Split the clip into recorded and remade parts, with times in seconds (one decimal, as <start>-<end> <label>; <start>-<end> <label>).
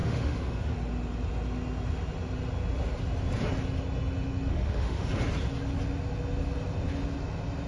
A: 0.0-0.7 remade; 0.7-4.5 recorded; 4.5-5.1 remade; 5.1-7.7 recorded